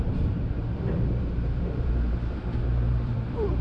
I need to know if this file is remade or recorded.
remade